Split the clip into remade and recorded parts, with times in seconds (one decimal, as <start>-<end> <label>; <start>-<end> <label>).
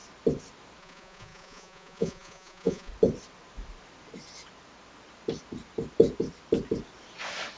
0.0-0.8 recorded; 0.8-2.9 remade; 2.9-7.6 recorded